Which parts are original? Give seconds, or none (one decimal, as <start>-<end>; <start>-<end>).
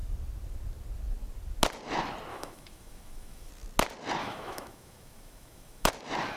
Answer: 0.0-2.3; 3.5-4.2; 5.9-6.4